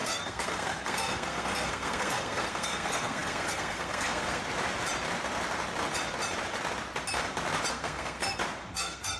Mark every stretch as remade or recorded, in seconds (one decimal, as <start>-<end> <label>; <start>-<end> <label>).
0.0-4.4 remade; 4.4-7.7 recorded; 7.7-8.2 remade; 8.2-8.7 recorded; 8.7-9.2 remade